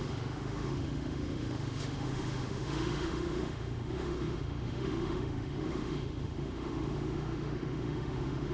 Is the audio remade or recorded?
remade